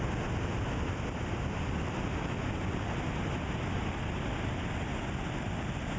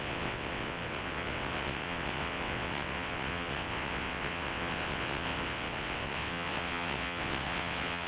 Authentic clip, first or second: first